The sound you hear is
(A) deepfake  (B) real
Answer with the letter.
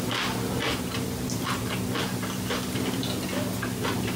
B